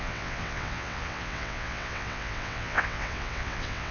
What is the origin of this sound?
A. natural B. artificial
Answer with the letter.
B